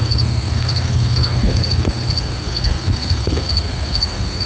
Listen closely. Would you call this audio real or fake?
fake